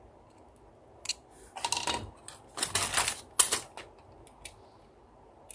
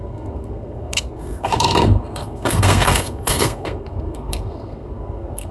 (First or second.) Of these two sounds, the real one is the first